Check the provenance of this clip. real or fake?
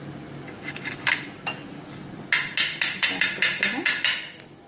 real